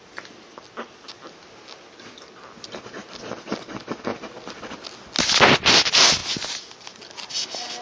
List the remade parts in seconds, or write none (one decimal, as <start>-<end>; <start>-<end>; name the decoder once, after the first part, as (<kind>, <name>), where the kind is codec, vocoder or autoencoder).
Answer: none